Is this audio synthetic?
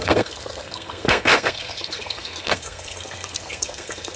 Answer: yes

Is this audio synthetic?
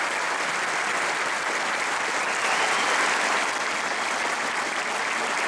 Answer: no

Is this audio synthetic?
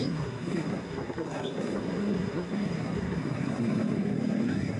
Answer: yes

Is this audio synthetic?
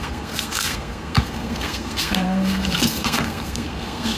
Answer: yes